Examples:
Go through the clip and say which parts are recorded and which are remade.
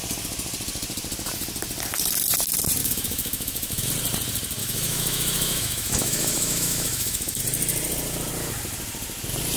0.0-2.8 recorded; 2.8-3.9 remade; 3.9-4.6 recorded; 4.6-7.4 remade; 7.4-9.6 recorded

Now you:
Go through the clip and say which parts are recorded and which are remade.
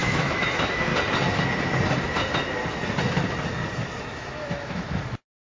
0.0-0.9 remade; 0.9-4.0 recorded; 4.0-5.5 remade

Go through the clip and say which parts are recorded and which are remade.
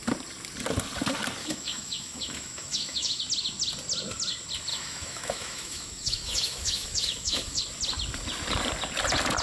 0.0-1.4 recorded; 1.4-3.2 remade; 3.2-4.7 recorded; 4.7-7.6 remade; 7.6-9.4 recorded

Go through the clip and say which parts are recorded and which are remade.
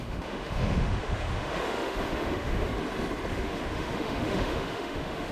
0.0-2.7 remade; 2.7-3.3 recorded; 3.3-5.3 remade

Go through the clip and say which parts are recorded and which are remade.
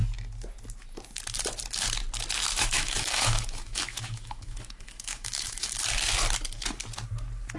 0.0-2.5 recorded; 2.5-5.8 remade; 5.8-7.6 recorded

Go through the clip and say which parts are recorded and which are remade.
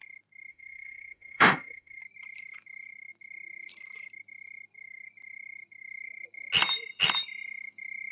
0.0-0.5 recorded; 0.5-2.0 remade; 2.0-8.1 recorded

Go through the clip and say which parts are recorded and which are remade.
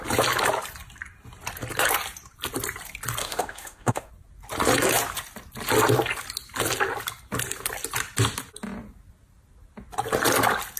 0.0-3.2 recorded; 3.2-4.1 remade; 4.1-10.8 recorded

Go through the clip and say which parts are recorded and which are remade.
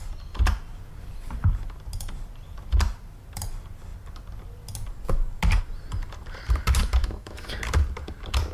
0.0-7.0 recorded; 7.0-7.5 remade; 7.5-8.5 recorded